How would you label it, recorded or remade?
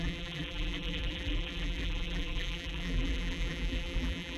remade